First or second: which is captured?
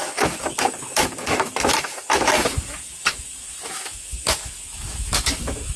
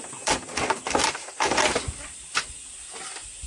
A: second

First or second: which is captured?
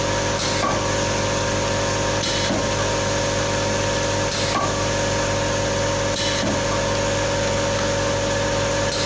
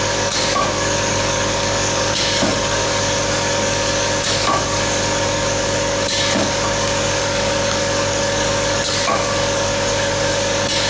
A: first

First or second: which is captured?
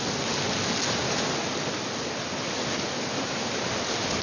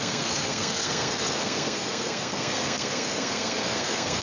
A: first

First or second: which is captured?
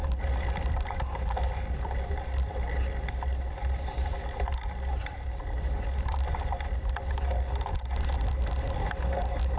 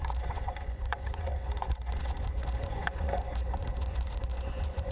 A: first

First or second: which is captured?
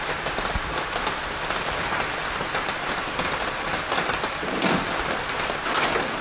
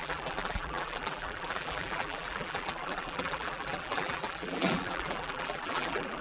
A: first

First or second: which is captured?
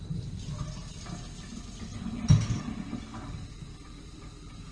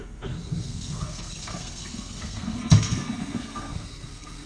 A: first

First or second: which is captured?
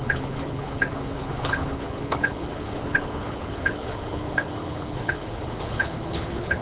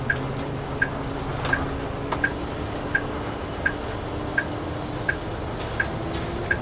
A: second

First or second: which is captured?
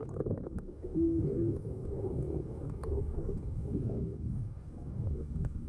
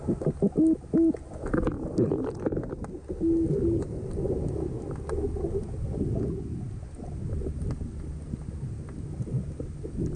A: second